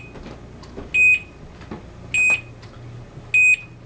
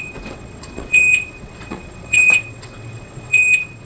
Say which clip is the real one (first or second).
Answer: first